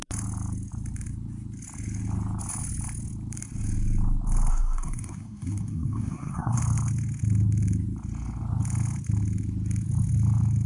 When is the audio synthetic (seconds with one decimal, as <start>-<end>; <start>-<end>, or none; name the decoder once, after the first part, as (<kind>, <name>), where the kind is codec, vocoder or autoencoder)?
4.5-6.6 (codec, SNAC)